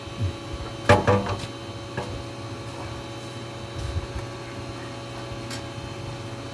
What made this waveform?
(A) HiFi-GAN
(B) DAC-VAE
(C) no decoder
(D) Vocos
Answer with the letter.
C